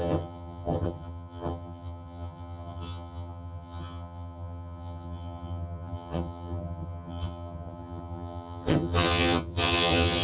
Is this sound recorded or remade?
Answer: remade